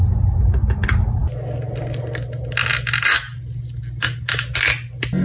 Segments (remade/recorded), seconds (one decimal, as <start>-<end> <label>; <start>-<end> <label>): 0.0-5.2 recorded